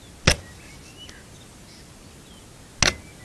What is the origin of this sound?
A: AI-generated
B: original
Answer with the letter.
B